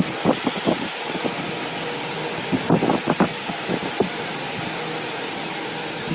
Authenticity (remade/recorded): recorded